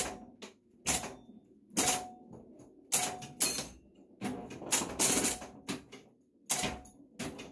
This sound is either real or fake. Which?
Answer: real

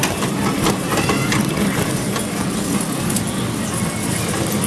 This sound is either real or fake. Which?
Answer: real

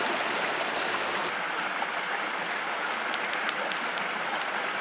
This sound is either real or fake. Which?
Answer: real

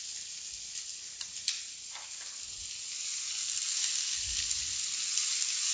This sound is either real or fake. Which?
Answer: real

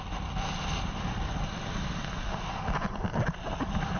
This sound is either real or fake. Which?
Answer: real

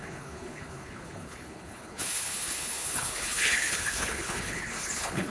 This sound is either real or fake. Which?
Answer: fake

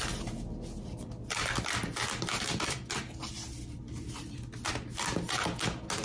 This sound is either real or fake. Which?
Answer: real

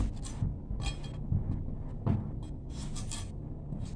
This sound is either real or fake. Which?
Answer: real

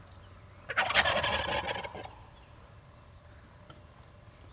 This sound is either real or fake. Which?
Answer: real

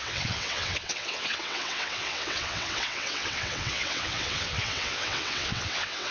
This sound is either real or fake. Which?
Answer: fake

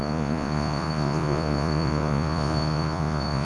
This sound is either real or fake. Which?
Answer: fake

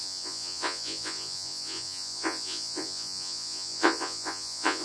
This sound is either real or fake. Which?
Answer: fake